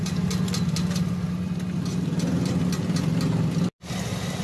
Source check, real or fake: real